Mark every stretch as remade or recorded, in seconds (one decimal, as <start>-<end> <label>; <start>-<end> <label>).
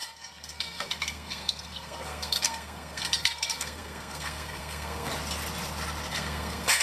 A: 0.0-5.1 remade; 5.1-6.1 recorded; 6.1-6.8 remade